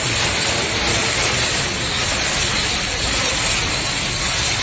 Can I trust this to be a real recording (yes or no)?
no